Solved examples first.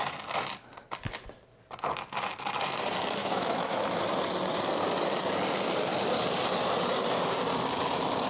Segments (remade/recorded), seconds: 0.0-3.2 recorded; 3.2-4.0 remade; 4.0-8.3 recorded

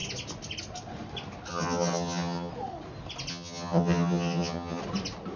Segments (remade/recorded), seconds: 0.0-1.5 recorded; 1.5-2.5 remade; 2.5-3.3 recorded; 3.3-4.8 remade; 4.8-5.4 recorded

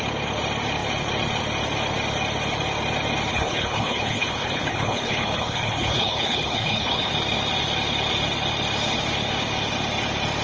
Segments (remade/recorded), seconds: 0.0-3.3 recorded; 3.3-7.1 remade; 7.1-10.4 recorded

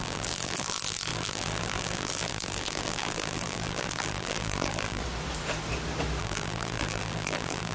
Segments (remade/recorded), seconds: 0.0-5.0 remade; 5.0-6.2 recorded; 6.2-7.7 remade

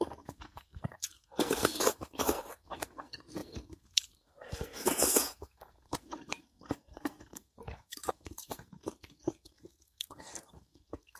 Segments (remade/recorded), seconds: 0.0-11.2 remade